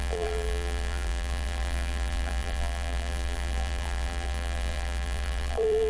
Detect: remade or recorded remade